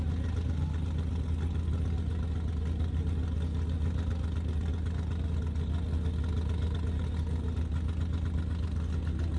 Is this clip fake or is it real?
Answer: real